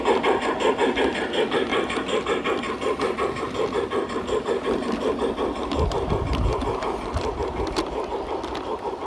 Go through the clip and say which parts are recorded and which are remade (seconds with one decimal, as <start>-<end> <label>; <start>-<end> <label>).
0.0-1.7 recorded; 1.7-6.1 remade; 6.1-6.5 recorded; 6.5-7.7 remade; 7.7-9.1 recorded